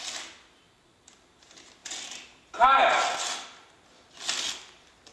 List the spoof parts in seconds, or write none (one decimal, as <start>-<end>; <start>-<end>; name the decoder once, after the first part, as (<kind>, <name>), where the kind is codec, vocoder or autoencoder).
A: none

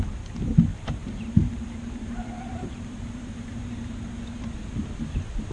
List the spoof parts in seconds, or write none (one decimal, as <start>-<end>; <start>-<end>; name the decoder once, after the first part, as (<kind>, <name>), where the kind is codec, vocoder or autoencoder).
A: 0.7-4.0 (vocoder, BigVGAN v2)

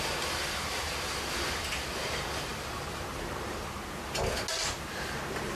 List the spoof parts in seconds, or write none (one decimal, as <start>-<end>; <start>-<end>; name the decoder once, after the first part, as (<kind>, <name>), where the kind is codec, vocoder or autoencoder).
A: none

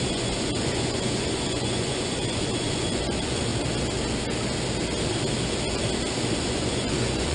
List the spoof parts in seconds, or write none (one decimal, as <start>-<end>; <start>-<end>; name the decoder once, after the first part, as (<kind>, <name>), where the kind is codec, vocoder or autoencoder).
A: 0.0-3.5 (vocoder, Vocos); 6.4-7.3

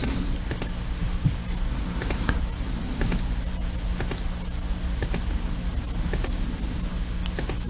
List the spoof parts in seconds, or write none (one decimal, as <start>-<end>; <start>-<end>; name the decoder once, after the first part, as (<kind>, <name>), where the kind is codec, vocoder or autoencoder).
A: none